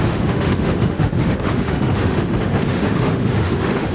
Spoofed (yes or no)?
yes